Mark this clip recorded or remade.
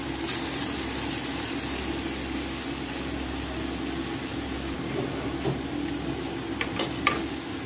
recorded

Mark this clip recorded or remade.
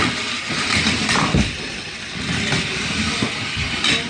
recorded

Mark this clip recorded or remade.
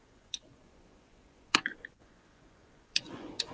remade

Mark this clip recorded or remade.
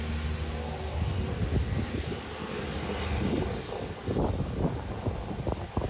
recorded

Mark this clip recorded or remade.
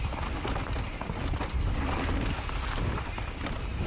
recorded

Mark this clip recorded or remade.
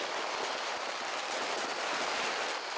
recorded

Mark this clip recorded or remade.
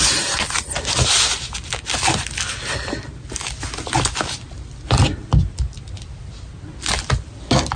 recorded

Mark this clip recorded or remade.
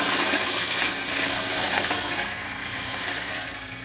remade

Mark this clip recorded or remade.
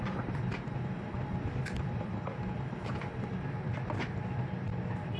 remade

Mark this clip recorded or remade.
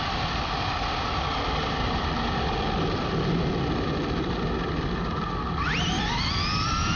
recorded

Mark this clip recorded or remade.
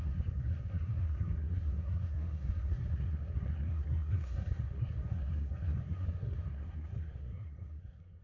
remade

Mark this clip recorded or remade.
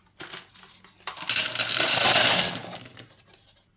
recorded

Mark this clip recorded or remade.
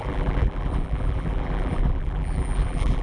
remade